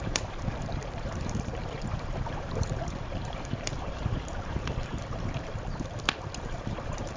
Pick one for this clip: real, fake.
fake